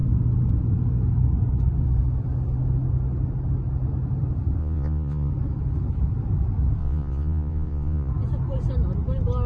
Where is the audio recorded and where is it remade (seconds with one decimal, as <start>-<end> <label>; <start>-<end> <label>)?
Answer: 0.0-4.6 recorded; 4.6-5.3 remade; 5.3-6.8 recorded; 6.8-8.1 remade; 8.1-9.5 recorded